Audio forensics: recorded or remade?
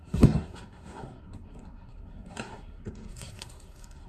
remade